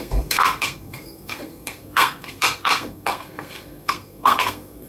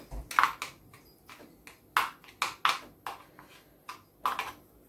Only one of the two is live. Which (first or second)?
second